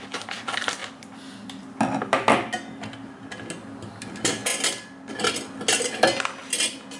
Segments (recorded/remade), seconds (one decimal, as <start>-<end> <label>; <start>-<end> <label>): 0.0-7.0 recorded